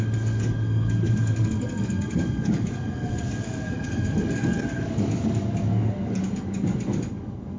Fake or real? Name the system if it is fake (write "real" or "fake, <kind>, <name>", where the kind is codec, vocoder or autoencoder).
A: fake, codec, DAC